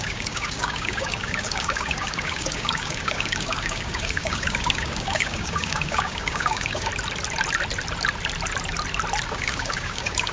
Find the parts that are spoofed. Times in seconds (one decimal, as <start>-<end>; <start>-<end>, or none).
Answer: 0.0-6.9; 9.3-10.3